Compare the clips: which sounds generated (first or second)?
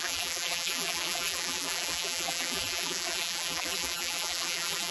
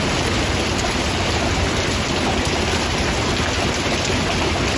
first